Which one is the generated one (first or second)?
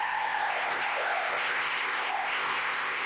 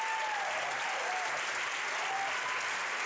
first